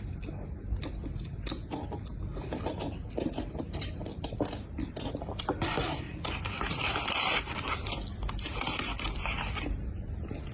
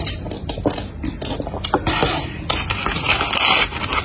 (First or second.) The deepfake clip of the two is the first